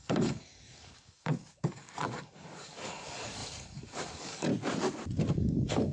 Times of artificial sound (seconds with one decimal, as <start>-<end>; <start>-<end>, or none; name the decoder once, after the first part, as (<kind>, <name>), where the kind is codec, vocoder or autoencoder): 0.0-4.5 (codec, DAC); 5.3-5.9